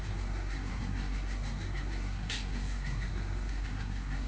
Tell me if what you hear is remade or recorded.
remade